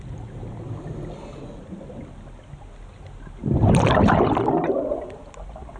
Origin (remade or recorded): recorded